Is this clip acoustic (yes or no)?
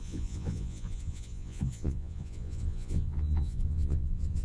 no